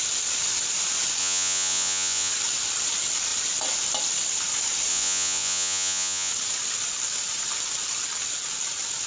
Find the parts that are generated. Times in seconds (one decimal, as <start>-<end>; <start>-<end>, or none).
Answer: 1.2-2.3; 4.9-6.3